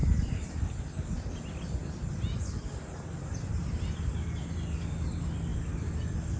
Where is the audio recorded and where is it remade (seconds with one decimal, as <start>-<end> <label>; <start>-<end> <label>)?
0.0-1.3 remade; 1.3-6.4 recorded